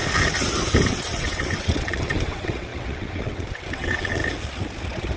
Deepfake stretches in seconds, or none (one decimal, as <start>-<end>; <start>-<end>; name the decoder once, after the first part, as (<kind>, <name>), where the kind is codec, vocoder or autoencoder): 0.9-4.2 (vocoder, WaveNeXt)